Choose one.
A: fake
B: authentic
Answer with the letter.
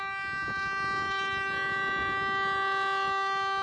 B